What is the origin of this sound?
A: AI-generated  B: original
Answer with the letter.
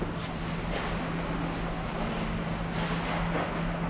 B